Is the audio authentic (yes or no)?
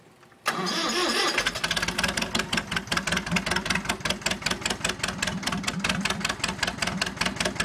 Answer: yes